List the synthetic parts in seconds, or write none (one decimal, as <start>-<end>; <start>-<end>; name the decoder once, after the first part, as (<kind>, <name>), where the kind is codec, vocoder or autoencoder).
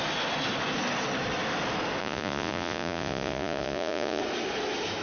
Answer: 2.0-4.2 (vocoder, Vocos)